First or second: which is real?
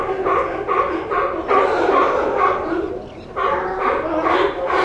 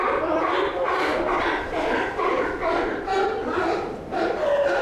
first